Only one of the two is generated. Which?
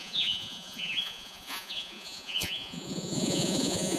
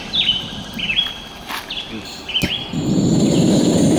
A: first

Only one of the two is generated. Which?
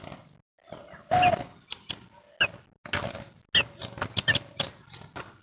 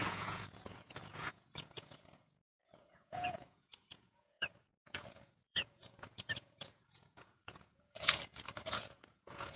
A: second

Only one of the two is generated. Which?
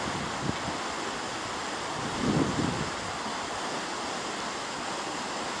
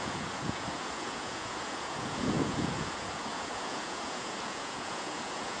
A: second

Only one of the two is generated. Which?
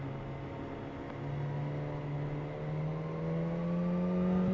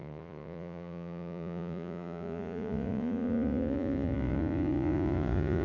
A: second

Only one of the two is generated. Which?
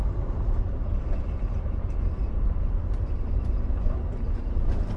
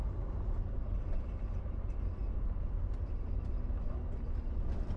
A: first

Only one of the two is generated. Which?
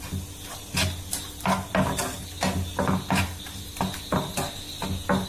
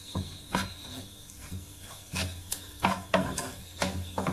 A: second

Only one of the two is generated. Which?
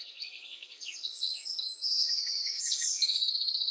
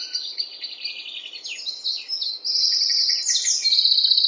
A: first